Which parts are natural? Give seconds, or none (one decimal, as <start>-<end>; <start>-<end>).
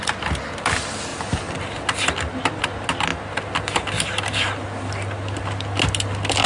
0.0-6.5